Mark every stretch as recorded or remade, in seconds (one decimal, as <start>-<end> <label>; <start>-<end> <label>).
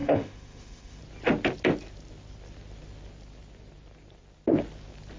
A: 0.0-1.0 remade; 1.0-5.2 recorded